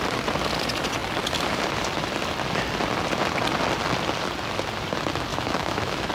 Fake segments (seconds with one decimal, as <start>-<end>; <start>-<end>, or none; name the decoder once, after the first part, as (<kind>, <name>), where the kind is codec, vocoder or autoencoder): 5.3-6.1 (autoencoder, DAC-VAE)